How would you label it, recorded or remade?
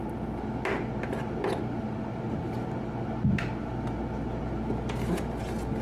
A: recorded